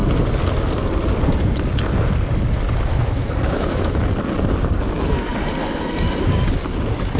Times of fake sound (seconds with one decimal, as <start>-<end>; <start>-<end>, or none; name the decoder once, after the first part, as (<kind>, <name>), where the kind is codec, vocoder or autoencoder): 2.9-4.1 (autoencoder, DAC-VAE)